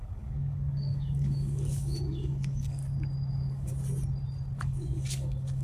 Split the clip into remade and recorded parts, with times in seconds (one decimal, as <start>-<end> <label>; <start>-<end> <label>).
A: 0.0-2.8 remade; 2.8-3.3 recorded; 3.3-3.7 remade; 3.7-4.6 recorded; 4.6-5.6 remade